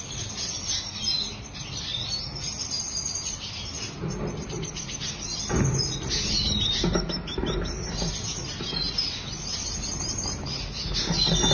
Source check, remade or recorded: recorded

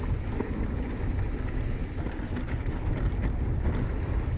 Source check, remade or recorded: recorded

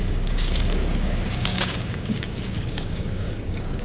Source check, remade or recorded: remade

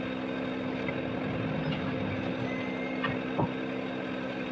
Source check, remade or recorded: recorded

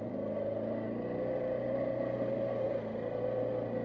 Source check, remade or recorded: recorded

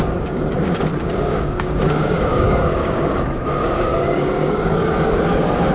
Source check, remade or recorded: remade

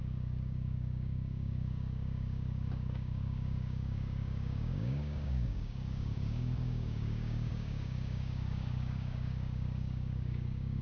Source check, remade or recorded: remade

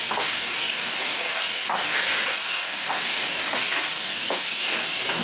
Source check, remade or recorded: remade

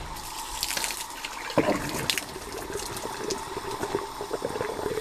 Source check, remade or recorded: recorded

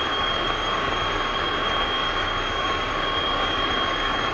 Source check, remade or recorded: remade